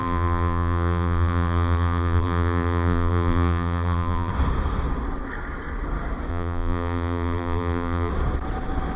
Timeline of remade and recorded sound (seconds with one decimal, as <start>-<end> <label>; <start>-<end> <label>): 0.0-4.3 remade; 4.3-6.3 recorded; 6.3-8.1 remade; 8.1-9.0 recorded